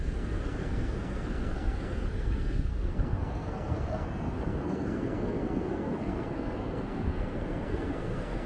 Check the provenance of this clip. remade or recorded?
remade